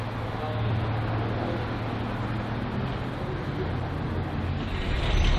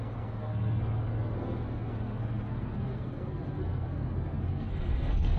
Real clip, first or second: first